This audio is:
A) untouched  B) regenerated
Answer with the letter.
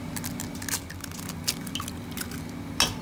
A